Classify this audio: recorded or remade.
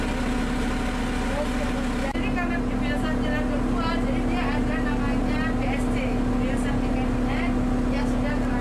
recorded